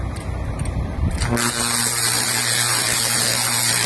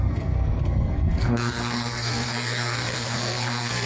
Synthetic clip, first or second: second